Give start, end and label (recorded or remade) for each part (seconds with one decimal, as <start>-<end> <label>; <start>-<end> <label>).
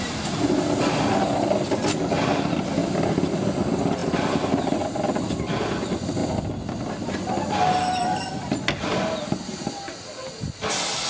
0.0-11.1 recorded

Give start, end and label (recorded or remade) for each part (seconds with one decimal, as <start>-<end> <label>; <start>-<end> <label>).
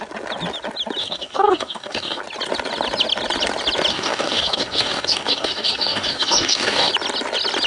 0.0-1.0 recorded; 1.0-2.2 remade; 2.2-3.9 recorded; 3.9-6.9 remade; 6.9-7.7 recorded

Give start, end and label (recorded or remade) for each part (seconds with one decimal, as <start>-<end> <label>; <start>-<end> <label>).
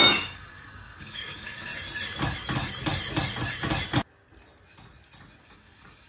0.0-1.7 remade; 1.7-5.4 recorded; 5.4-6.1 remade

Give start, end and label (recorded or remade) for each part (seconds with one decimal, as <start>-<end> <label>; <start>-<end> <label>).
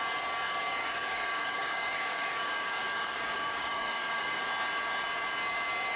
0.0-0.8 recorded; 0.8-4.4 remade; 4.4-6.0 recorded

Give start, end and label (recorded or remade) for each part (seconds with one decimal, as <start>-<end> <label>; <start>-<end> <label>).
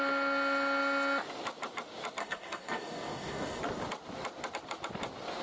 0.0-2.2 recorded; 2.2-3.6 remade; 3.6-5.4 recorded